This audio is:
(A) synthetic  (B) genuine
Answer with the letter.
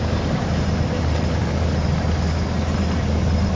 B